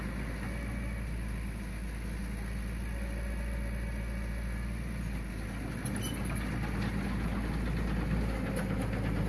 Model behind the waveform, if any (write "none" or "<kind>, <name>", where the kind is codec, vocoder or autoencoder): none